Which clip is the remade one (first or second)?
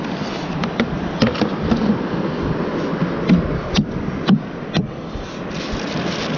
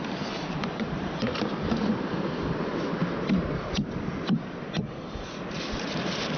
second